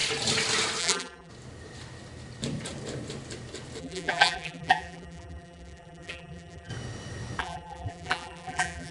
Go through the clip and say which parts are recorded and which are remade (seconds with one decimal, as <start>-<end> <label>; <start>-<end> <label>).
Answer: 0.0-0.8 recorded; 0.8-1.3 remade; 1.3-3.8 recorded; 3.8-6.7 remade; 6.7-7.4 recorded; 7.4-8.9 remade